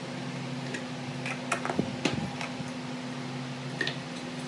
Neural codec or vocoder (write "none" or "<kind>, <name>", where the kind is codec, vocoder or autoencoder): none